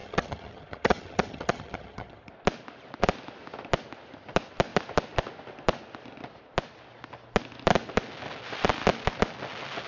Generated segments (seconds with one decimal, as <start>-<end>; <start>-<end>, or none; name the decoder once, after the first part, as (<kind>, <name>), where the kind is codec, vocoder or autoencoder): 0.0-2.3 (vocoder, HiFi-GAN)